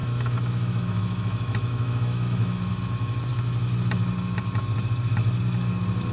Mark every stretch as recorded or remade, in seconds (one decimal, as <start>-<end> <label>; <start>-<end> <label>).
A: 0.0-2.7 remade; 2.7-6.1 recorded